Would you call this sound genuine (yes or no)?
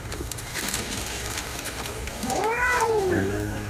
no